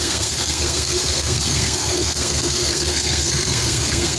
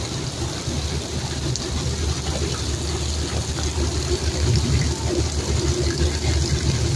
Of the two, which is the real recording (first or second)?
second